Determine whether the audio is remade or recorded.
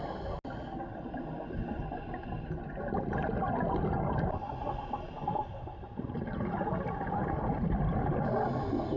recorded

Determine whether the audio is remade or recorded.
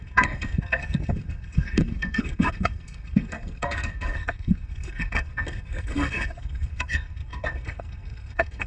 remade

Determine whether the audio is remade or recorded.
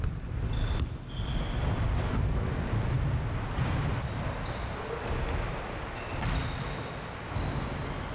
recorded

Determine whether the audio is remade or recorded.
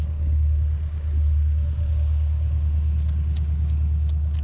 recorded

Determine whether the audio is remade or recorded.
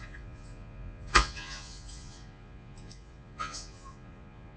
remade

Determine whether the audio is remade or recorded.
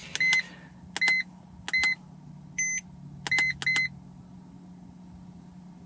recorded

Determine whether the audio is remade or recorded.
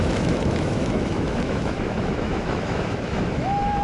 remade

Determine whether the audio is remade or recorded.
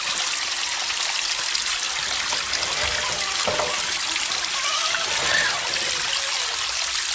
recorded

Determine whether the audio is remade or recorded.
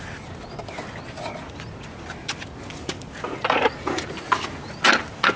recorded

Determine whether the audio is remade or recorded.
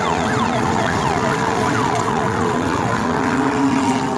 remade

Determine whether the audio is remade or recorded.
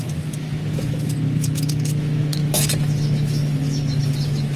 remade